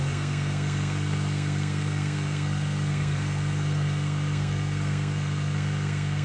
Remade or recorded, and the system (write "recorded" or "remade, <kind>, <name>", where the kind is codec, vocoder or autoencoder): remade, codec, SNAC